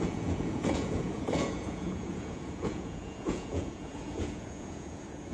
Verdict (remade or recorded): remade